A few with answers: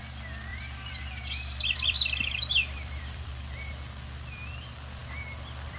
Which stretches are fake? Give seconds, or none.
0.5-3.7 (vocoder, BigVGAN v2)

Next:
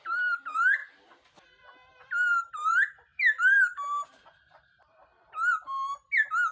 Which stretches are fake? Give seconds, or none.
0.0-0.8 (vocoder, BigVGAN v2); 2.5-5.1

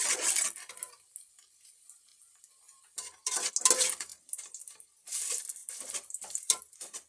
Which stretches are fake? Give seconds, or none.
5.6-6.6 (vocoder, BigVGAN v2)

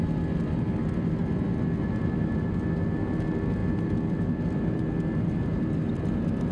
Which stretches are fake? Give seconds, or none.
3.6-5.4 (vocoder, BigVGAN v2)

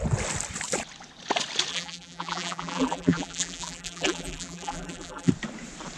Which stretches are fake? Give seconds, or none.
1.7-5.3 (vocoder, BigVGAN v2)

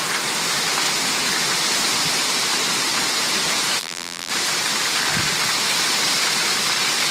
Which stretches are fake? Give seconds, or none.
3.8-4.3 (vocoder, BigVGAN v2)

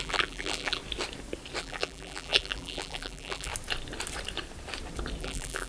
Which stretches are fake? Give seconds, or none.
0.0-0.8 (vocoder, BigVGAN v2); 1.6-3.5; 5.2-5.7

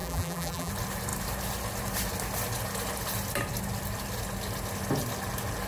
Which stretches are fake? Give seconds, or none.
0.0-0.7 (vocoder, BigVGAN v2)